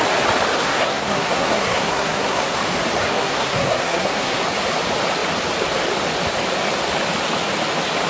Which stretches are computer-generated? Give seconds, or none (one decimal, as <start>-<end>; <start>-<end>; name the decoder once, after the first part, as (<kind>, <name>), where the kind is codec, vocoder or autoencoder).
0.6-2.6 (codec, SNAC); 3.1-4.4